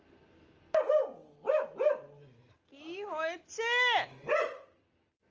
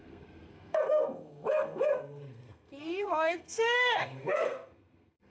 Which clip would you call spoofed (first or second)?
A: second